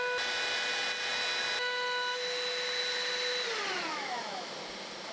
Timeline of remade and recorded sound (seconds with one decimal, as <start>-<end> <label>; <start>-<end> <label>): 0.0-3.9 recorded; 3.9-4.5 remade; 4.5-5.1 recorded